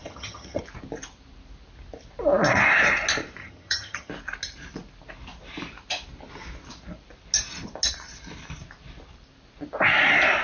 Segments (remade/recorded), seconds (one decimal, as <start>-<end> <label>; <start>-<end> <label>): 0.0-0.6 remade; 0.6-3.4 recorded; 3.4-4.1 remade; 4.1-10.4 recorded